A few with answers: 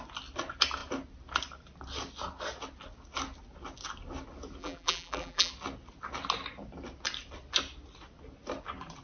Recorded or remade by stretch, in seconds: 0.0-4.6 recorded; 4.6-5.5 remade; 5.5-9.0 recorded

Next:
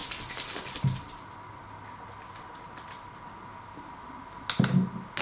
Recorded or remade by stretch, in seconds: 0.0-5.2 recorded

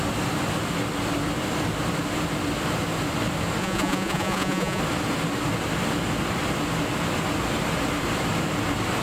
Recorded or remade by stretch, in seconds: 0.0-3.6 recorded; 3.6-4.8 remade; 4.8-9.0 recorded

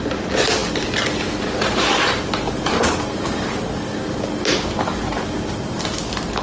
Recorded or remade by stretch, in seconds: 0.0-6.4 recorded